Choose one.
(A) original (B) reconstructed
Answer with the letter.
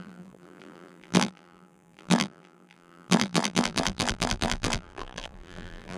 B